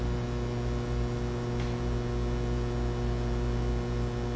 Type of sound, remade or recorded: recorded